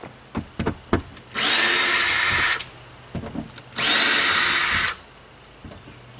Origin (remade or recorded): recorded